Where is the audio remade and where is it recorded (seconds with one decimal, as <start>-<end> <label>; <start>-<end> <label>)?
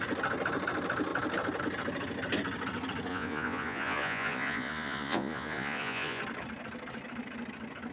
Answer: 0.0-3.1 recorded; 3.1-6.2 remade; 6.2-7.9 recorded